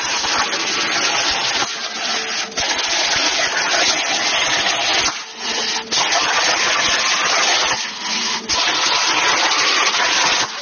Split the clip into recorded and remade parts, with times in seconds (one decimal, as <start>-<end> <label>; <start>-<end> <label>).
0.0-10.6 recorded